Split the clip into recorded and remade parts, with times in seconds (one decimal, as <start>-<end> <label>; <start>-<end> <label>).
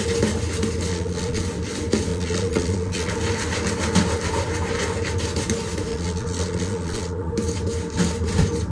0.0-0.9 recorded; 0.9-1.4 remade; 1.4-2.1 recorded; 2.1-3.1 remade; 3.1-5.9 recorded; 5.9-7.3 remade; 7.3-8.7 recorded